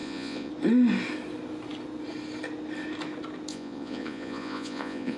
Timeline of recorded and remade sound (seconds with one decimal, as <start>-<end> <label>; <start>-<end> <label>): 0.0-0.5 remade; 0.5-3.5 recorded; 3.5-5.2 remade